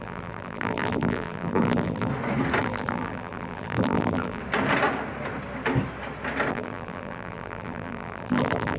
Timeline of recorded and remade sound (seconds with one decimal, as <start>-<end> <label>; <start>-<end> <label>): 0.0-2.1 remade; 2.1-2.6 recorded; 2.6-4.4 remade; 4.4-6.5 recorded; 6.5-8.8 remade